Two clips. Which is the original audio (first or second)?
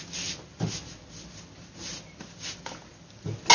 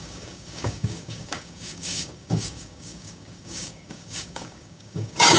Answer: first